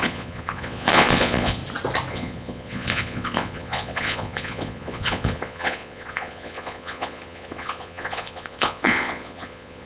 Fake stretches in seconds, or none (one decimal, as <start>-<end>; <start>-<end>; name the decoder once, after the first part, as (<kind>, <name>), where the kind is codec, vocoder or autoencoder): 0.0-1.6 (vocoder, Vocos); 2.1-9.9